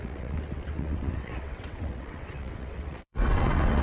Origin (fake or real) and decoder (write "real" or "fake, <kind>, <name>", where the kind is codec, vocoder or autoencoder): fake, vocoder, WaveNeXt